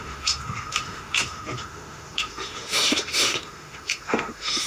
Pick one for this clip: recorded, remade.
remade